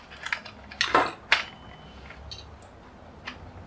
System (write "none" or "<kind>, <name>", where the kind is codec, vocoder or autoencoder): none